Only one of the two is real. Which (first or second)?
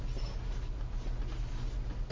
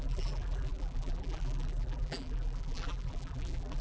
first